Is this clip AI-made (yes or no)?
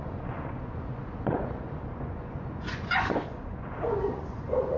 yes